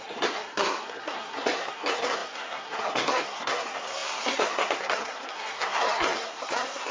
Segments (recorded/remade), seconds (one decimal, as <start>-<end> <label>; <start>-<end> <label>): 0.0-6.9 remade